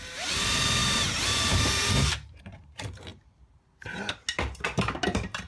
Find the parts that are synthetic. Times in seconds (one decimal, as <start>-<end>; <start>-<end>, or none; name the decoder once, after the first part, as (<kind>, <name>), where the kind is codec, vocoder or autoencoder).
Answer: 0.0-3.1 (vocoder, BigVGAN v2); 4.3-5.5